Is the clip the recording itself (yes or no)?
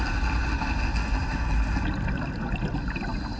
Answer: yes